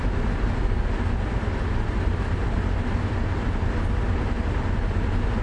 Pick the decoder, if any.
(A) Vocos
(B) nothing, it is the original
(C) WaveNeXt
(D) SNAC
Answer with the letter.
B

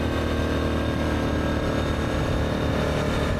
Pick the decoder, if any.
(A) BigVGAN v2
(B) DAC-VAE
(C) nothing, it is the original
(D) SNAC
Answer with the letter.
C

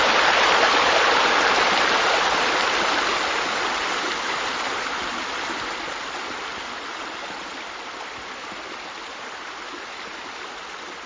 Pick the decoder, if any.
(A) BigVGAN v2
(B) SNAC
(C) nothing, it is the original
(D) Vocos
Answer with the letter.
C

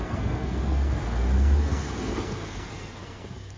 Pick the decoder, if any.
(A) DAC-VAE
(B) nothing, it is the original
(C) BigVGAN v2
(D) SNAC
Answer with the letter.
D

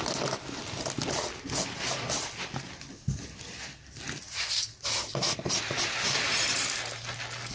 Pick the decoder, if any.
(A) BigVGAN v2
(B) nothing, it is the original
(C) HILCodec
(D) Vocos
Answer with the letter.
B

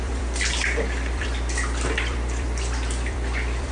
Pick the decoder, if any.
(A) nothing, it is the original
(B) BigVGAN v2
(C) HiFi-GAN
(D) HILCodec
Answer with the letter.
B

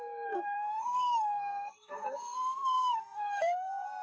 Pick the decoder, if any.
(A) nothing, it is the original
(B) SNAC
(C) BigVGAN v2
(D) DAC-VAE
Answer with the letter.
B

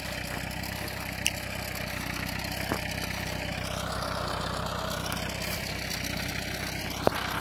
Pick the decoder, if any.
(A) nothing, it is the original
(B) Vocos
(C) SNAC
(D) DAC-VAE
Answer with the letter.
A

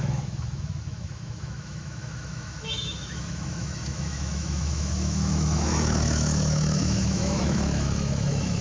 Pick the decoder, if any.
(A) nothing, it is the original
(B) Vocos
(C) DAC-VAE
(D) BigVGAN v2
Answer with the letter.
C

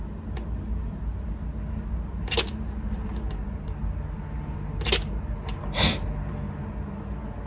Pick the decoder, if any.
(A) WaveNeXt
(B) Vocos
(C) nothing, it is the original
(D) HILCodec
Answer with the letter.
C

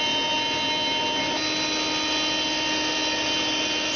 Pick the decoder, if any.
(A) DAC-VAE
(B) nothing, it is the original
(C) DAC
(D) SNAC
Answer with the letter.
B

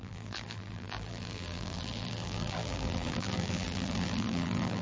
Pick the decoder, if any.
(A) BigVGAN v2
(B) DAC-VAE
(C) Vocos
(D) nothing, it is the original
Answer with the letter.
A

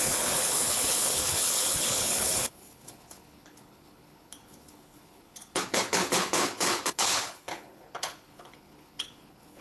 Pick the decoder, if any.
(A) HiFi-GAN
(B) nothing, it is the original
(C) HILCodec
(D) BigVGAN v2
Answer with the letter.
C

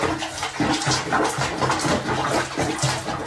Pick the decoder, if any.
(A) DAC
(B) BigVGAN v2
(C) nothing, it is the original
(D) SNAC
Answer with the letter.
C